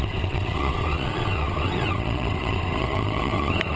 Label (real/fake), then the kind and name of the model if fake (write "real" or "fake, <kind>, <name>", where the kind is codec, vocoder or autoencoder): fake, vocoder, WaveNeXt